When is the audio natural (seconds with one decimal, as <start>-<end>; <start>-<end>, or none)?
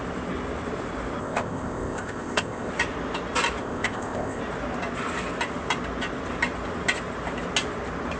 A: 0.0-1.2; 2.7-3.6; 4.4-8.2